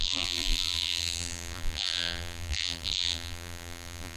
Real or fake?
fake